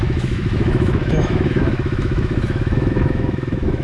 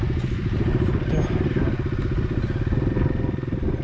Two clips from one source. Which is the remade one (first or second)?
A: first